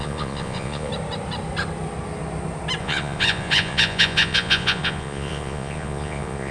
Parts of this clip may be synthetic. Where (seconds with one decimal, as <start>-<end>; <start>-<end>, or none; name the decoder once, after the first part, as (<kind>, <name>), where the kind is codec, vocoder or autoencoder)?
0.0-0.9 (vocoder, Vocos); 2.8-6.5

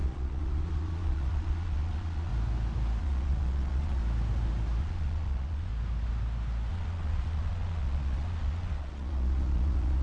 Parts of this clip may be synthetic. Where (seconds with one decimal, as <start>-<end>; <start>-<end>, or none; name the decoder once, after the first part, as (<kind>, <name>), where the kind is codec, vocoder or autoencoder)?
0.0-2.3 (vocoder, Vocos); 3.0-4.0; 4.8-5.7; 6.7-10.0

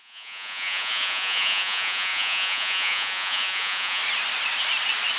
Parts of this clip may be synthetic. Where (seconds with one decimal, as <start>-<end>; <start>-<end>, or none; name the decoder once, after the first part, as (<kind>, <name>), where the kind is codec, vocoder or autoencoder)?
0.0-4.0 (vocoder, Vocos)

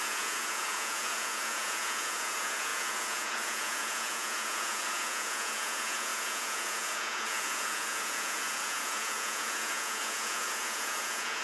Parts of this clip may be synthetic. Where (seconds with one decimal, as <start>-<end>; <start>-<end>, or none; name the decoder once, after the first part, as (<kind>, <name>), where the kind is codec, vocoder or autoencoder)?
0.0-11.4 (vocoder, Vocos)